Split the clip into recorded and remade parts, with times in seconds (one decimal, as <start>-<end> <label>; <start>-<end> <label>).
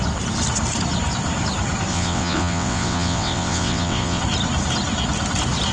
0.0-1.9 recorded; 1.9-4.2 remade; 4.2-5.7 recorded